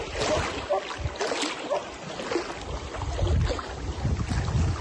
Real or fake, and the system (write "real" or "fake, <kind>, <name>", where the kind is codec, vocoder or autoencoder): real